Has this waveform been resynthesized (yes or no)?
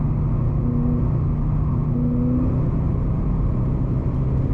no